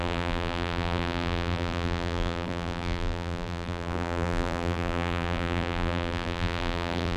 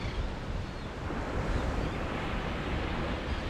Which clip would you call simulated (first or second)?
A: first